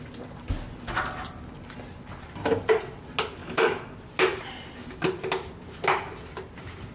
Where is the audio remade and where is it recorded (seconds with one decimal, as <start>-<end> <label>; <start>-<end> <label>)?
0.0-3.4 recorded; 3.4-4.1 remade; 4.1-6.9 recorded